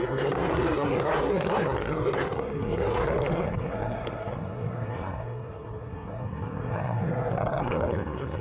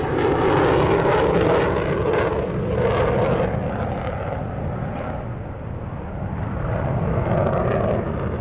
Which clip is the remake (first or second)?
first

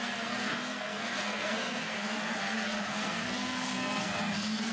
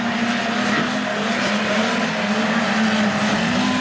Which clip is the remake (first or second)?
first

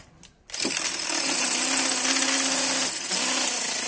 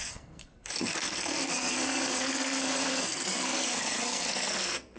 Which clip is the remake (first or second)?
second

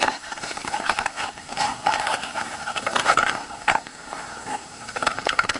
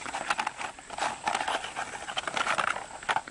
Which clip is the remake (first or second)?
first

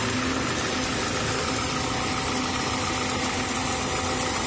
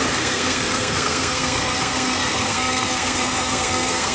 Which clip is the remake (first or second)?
second